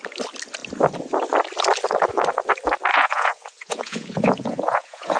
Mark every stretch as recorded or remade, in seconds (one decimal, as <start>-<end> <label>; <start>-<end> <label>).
0.0-2.9 recorded; 2.9-5.2 remade